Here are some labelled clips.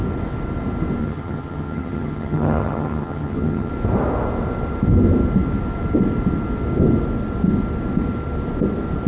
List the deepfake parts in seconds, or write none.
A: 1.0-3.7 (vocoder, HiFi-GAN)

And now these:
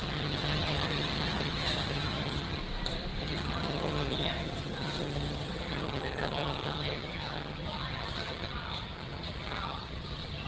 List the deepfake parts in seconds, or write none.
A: 0.0-2.6 (vocoder, HiFi-GAN); 3.2-10.5

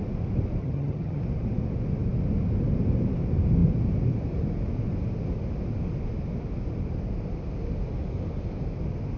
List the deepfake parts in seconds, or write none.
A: 0.6-1.2 (vocoder, HiFi-GAN)

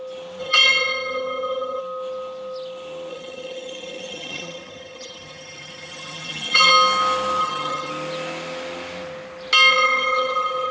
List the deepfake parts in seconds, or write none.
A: 0.4-1.8 (vocoder, HiFi-GAN); 3.1-6.7; 7.4-7.9; 9.7-10.7

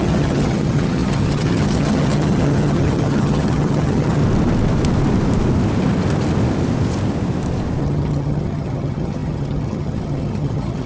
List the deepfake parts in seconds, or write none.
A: 0.0-4.2 (vocoder, HiFi-GAN); 7.8-10.9

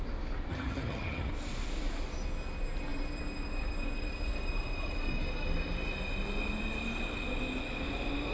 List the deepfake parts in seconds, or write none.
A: 0.5-1.3 (vocoder, HiFi-GAN)

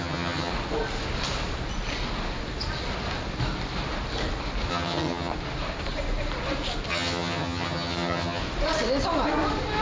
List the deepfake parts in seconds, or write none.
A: 0.0-0.5 (vocoder, HiFi-GAN); 4.7-5.3; 6.9-8.4

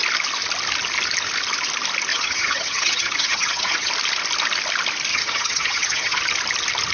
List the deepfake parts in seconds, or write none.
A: 2.1-3.9 (vocoder, HiFi-GAN); 5.1-6.2